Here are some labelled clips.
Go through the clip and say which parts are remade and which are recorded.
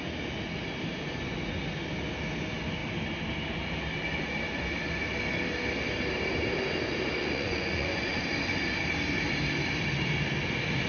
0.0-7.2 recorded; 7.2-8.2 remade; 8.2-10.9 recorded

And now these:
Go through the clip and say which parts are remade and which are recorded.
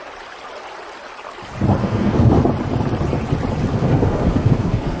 0.0-1.8 recorded; 1.8-2.4 remade; 2.4-3.7 recorded; 3.7-5.0 remade